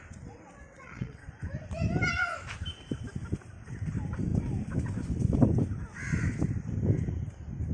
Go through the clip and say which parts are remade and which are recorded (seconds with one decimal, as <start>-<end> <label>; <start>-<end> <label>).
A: 0.0-0.6 recorded; 0.6-1.2 remade; 1.2-7.7 recorded